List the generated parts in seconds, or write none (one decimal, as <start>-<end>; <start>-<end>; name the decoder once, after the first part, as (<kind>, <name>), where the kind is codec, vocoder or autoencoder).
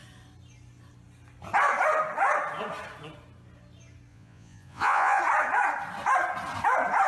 4.1-5.2 (vocoder, Vocos)